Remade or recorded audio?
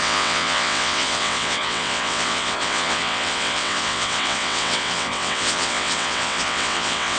remade